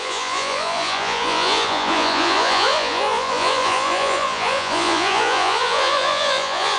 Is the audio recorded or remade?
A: remade